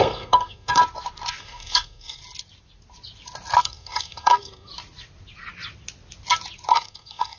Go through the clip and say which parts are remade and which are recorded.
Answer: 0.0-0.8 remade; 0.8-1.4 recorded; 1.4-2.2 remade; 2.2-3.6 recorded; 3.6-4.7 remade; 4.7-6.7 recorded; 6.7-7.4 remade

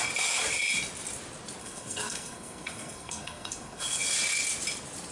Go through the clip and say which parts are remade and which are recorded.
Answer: 0.0-1.6 recorded; 1.6-4.0 remade; 4.0-5.1 recorded

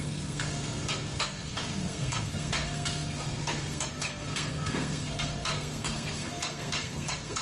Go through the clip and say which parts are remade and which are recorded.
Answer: 0.0-7.4 remade